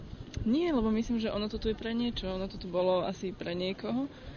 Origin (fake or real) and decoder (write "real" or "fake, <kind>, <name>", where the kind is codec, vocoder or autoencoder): real